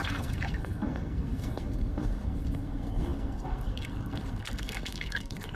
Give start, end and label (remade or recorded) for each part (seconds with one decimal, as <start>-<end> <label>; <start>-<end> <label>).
0.0-5.5 remade